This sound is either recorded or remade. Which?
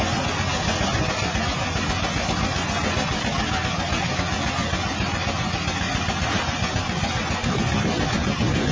recorded